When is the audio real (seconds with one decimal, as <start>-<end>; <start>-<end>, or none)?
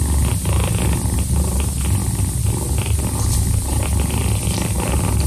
0.0-5.3